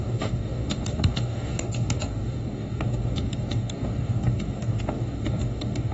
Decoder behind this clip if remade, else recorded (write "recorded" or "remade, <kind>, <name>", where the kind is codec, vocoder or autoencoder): remade, codec, DAC